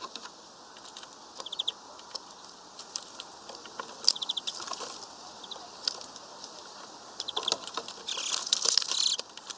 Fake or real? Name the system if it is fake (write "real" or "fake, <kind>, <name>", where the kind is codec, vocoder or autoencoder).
real